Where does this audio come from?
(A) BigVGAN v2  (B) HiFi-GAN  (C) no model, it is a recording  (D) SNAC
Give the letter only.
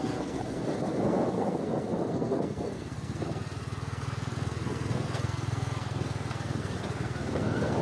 D